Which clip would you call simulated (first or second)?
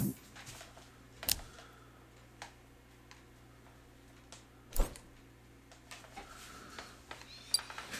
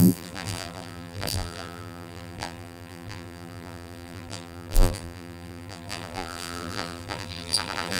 second